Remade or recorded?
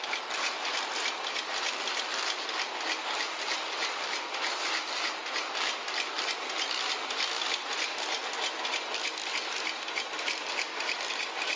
recorded